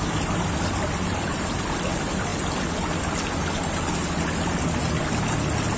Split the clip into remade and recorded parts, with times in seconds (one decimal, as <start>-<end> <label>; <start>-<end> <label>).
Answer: 0.0-5.8 recorded